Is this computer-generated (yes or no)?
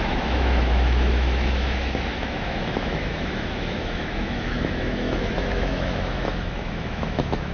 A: yes